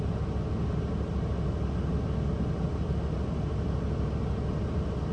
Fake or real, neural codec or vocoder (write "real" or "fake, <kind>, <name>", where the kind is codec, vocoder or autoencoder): real